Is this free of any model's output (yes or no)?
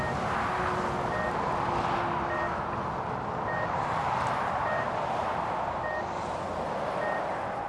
yes